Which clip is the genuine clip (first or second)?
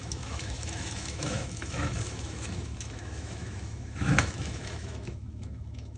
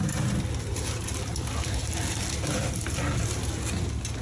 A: second